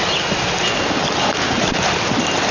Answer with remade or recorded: recorded